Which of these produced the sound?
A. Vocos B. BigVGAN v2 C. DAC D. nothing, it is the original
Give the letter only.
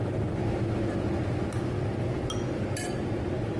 D